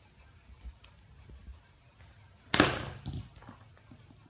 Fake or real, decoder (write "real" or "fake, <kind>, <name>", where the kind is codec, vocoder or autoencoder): real